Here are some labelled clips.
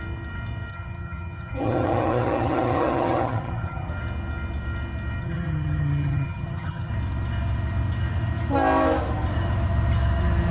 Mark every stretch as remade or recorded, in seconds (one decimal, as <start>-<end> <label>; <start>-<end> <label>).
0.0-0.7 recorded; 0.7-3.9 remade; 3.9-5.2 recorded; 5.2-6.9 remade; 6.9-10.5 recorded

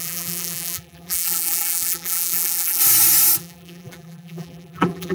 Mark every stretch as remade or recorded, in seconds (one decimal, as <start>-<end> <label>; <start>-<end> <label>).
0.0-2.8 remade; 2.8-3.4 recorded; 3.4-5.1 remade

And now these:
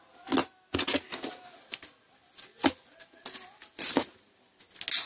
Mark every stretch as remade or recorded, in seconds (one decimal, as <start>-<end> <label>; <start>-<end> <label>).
0.0-5.1 recorded